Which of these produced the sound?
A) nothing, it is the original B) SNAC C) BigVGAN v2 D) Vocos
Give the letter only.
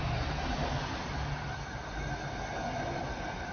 A